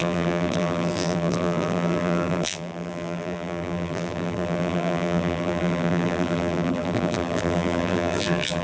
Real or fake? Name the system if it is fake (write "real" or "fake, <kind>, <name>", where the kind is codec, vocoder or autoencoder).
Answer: fake, vocoder, BigVGAN v2